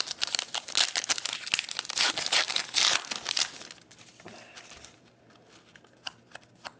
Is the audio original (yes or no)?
yes